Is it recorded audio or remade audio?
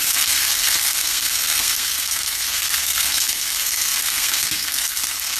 remade